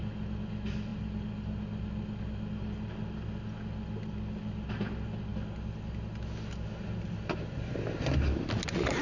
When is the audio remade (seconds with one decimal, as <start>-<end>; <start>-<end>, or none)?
none